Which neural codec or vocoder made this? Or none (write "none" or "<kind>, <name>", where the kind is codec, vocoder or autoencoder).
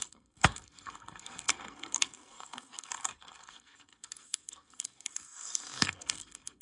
codec, SNAC